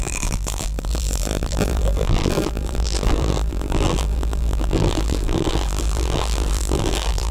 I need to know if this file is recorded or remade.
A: remade